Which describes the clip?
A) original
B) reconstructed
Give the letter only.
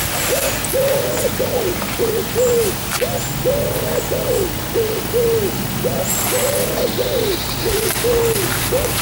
A